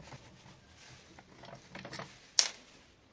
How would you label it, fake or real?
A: real